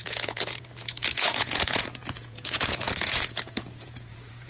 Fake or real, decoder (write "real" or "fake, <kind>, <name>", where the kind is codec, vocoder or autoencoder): fake, vocoder, Vocos